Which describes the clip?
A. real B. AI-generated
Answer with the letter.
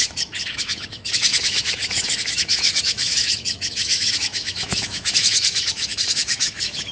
B